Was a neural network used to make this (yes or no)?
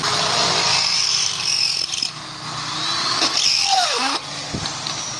no